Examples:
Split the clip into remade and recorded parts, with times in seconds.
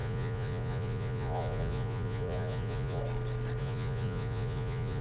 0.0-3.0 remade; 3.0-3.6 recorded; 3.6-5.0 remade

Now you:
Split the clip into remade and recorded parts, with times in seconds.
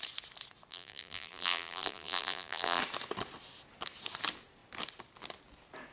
0.0-0.7 recorded; 0.7-2.8 remade; 2.8-5.9 recorded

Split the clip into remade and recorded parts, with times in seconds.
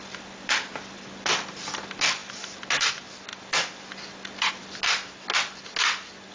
0.0-6.3 recorded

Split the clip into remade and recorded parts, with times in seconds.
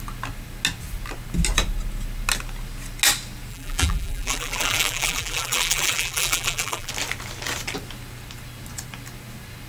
0.0-3.5 recorded; 3.5-6.9 remade; 6.9-9.7 recorded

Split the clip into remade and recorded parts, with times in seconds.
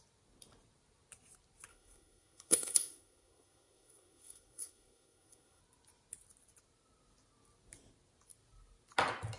0.0-1.7 recorded; 1.7-5.6 remade; 5.6-9.4 recorded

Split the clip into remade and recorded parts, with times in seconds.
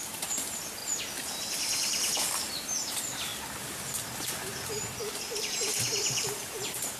0.0-0.8 remade; 0.8-2.5 recorded; 2.5-3.3 remade; 3.3-5.4 recorded; 5.4-7.0 remade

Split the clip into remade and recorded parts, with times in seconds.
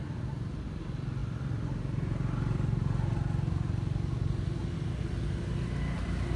0.0-6.4 recorded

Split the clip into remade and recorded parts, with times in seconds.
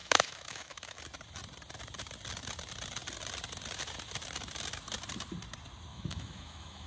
0.0-1.0 remade; 1.0-5.9 recorded; 5.9-6.9 remade